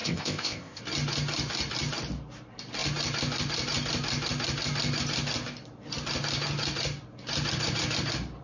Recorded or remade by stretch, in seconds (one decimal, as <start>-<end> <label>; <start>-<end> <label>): 0.0-0.8 remade; 0.8-8.4 recorded